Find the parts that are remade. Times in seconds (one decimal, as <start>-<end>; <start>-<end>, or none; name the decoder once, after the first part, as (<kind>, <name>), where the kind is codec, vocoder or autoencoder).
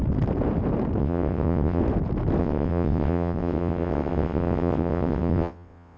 1.0-1.8 (vocoder, WaveNeXt); 2.4-6.0